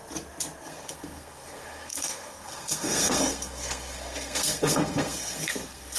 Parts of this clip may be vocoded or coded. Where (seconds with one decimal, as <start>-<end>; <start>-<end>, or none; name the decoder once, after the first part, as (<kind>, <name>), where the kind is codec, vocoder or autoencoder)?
0.6-6.0 (codec, SNAC)